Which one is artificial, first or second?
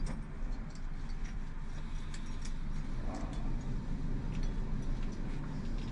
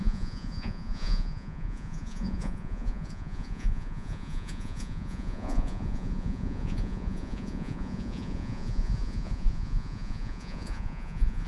second